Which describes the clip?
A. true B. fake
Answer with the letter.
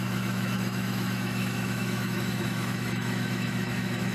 B